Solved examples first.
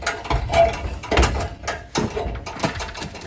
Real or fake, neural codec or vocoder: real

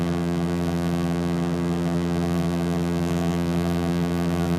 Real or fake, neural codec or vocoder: fake, vocoder, BigVGAN v2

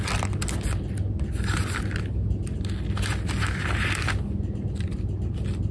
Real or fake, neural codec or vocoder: real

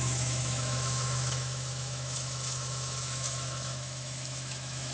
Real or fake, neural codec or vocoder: fake, autoencoder, DAC-VAE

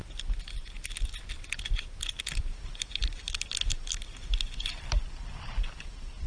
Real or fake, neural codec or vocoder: fake, vocoder, BigVGAN v2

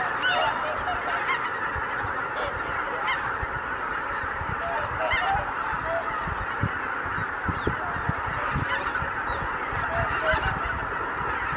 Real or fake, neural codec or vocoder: real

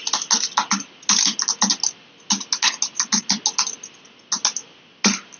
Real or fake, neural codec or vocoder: real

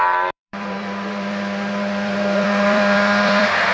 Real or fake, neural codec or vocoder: fake, vocoder, BigVGAN v2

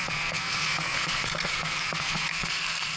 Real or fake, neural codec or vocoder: fake, codec, SNAC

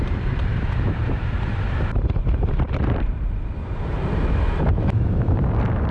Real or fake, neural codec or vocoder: fake, vocoder, BigVGAN v2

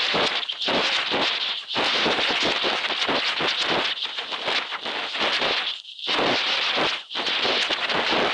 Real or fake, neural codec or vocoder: real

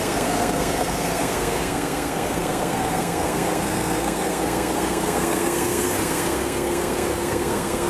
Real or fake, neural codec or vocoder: fake, codec, SNAC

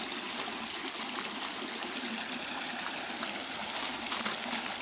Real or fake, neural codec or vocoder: real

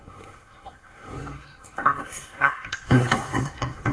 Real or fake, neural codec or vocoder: fake, codec, SNAC